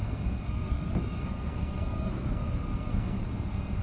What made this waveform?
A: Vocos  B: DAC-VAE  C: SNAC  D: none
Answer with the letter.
C